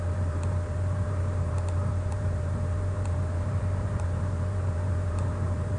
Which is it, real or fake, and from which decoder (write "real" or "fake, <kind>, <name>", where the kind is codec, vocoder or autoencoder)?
fake, vocoder, BigVGAN v2